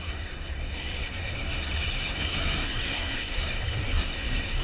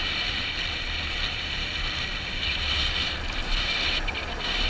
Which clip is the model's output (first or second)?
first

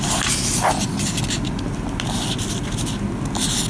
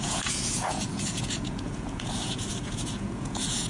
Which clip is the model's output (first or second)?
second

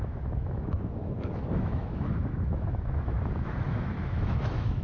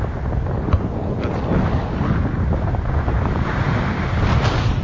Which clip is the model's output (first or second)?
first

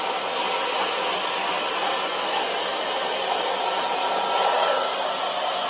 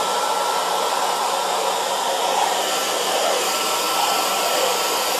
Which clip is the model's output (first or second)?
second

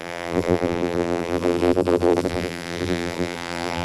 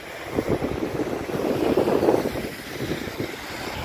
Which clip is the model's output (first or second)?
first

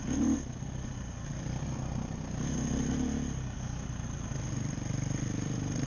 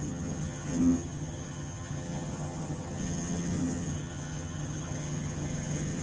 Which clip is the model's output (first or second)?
second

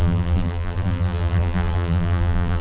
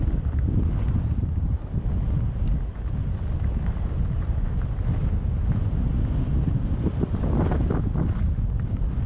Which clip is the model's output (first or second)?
first